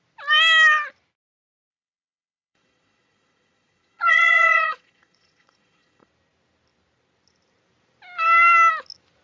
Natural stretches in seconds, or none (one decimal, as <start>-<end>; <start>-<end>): 0.0-1.7; 6.1-9.2